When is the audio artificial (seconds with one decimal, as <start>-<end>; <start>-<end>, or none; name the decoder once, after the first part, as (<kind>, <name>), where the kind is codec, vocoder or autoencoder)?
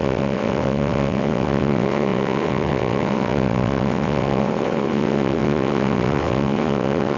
0.0-7.2 (vocoder, WaveNeXt)